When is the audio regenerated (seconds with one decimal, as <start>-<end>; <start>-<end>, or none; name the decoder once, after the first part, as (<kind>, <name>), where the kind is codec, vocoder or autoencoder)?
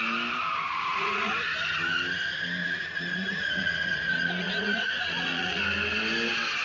0.7-1.3 (vocoder, Vocos); 2.6-5.6